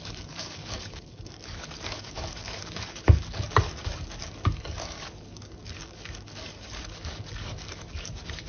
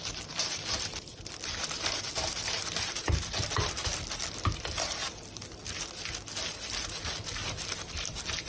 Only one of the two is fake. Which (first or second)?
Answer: first